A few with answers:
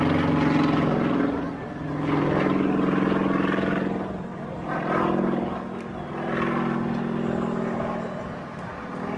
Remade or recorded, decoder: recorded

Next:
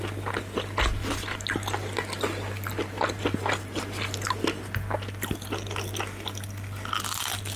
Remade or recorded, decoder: recorded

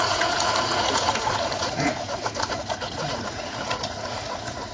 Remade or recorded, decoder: remade, vocoder, Vocos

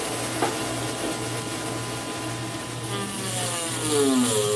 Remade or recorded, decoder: recorded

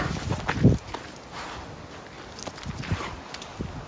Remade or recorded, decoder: recorded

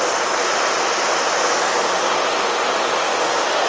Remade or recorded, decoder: recorded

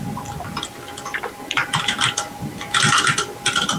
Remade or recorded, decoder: recorded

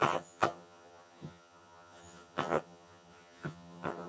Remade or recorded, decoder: remade, vocoder, HiFi-GAN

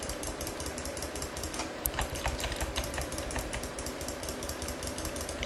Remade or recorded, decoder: remade, vocoder, BigVGAN v2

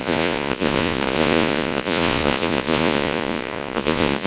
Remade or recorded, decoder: remade, vocoder, Vocos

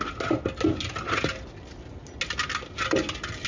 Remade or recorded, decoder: recorded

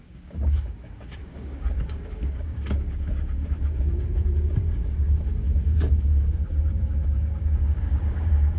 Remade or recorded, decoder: remade, codec, DAC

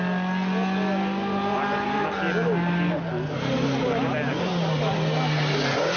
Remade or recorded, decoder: recorded